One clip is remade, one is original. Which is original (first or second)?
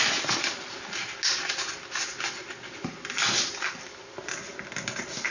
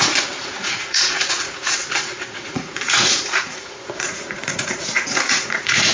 first